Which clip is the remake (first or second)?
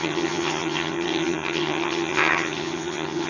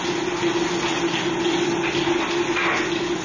first